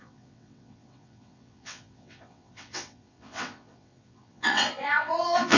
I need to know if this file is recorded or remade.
remade